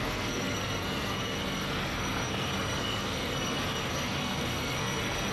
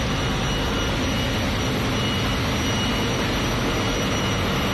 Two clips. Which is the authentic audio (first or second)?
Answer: second